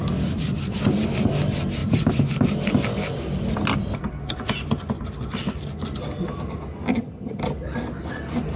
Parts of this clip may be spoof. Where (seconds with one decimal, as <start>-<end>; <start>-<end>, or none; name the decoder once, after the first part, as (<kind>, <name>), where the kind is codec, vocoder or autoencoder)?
6.9-7.4 (vocoder, HiFi-GAN)